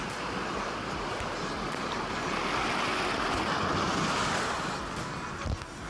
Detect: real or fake real